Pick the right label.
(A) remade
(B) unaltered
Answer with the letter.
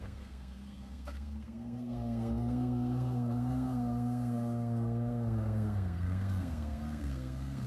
A